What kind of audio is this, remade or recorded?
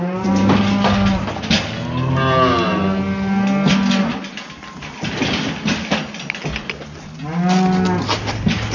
recorded